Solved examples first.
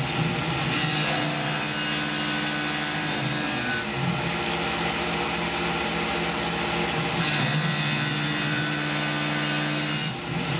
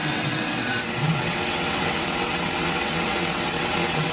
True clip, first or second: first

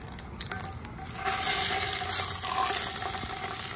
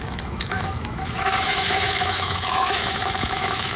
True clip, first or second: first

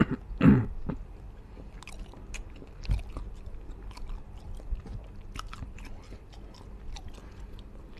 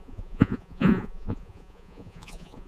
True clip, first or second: first